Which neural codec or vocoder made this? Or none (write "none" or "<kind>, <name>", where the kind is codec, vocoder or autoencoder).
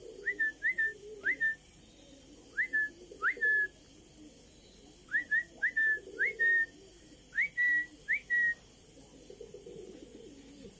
none